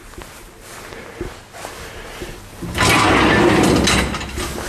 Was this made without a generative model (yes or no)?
yes